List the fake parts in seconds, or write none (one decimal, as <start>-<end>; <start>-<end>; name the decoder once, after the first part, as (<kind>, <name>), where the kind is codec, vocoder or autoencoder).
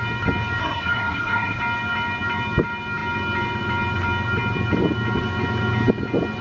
0.6-1.6 (codec, SNAC)